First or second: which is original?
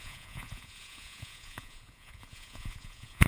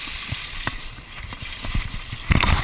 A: second